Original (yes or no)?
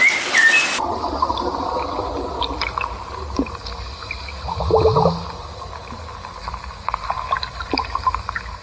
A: yes